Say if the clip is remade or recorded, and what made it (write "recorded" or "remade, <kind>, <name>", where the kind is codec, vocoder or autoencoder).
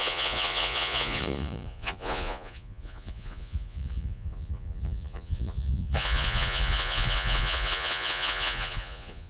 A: remade, vocoder, Vocos